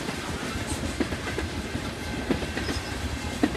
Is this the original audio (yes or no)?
yes